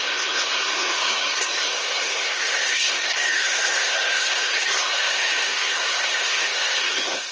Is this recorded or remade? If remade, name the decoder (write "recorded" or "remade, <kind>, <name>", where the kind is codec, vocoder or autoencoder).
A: remade, codec, SNAC